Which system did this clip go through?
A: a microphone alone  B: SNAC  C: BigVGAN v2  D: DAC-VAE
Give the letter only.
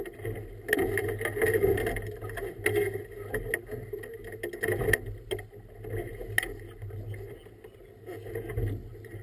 A